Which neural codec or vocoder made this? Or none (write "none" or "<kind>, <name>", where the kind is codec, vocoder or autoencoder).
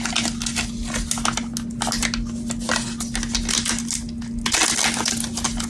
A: none